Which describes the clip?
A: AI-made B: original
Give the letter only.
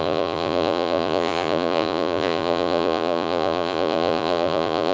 A